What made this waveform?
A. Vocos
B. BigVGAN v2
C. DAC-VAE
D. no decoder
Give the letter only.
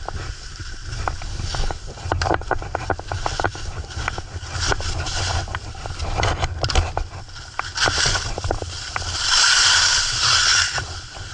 D